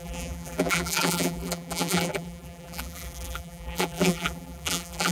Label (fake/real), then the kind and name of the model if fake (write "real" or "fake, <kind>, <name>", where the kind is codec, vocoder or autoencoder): fake, vocoder, BigVGAN v2